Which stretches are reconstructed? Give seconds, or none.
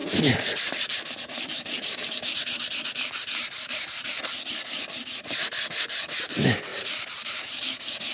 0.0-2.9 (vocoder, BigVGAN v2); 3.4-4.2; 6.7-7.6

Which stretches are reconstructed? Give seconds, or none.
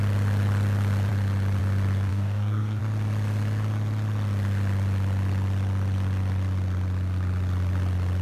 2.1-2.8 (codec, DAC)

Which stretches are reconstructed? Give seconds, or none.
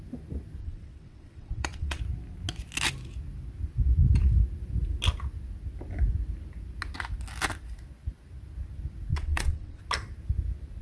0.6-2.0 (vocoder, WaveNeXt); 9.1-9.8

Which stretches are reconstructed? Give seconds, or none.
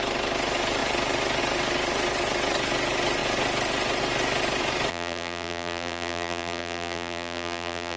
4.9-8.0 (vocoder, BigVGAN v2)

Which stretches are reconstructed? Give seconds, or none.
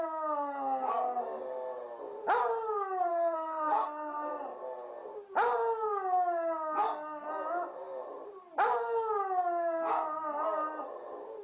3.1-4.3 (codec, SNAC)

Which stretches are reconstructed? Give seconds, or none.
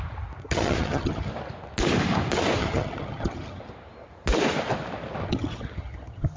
0.4-1.3 (vocoder, HiFi-GAN); 2.6-3.6; 5.2-6.4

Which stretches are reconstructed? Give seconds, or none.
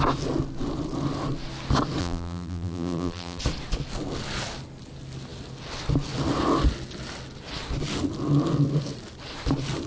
2.0-3.4 (vocoder, BigVGAN v2)